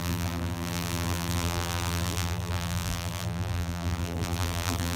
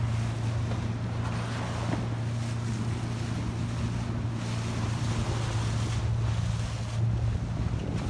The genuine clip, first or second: second